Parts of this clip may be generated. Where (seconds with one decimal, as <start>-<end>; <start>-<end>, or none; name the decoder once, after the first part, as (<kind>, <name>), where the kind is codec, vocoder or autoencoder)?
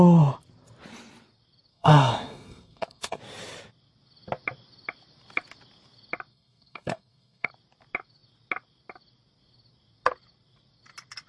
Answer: 1.7-3.2 (codec, SNAC); 6.3-7.5